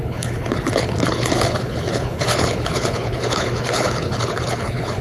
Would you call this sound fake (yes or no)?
yes